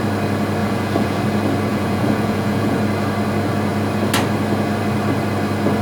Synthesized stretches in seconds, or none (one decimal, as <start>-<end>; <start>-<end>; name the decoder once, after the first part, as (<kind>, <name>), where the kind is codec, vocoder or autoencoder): 0.6-1.2 (vocoder, Vocos); 1.7-2.8